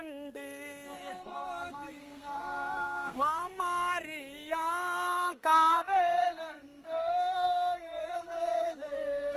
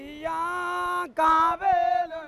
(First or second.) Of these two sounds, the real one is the second